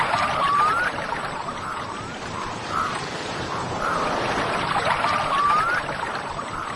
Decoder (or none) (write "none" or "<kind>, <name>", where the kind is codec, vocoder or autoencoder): vocoder, BigVGAN v2